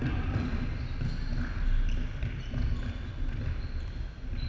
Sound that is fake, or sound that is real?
real